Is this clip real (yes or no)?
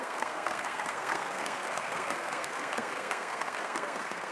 no